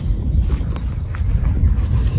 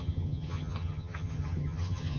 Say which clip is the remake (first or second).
second